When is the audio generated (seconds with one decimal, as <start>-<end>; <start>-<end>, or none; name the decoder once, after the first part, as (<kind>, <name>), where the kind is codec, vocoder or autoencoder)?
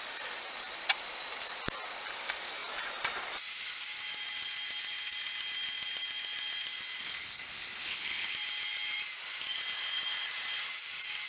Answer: 7.0-8.3 (codec, HILCodec)